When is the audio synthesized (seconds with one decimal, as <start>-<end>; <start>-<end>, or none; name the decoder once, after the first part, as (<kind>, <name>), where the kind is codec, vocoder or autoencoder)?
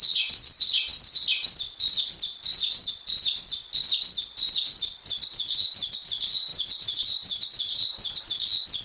6.5-8.2 (vocoder, BigVGAN v2)